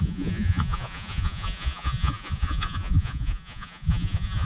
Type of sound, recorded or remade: remade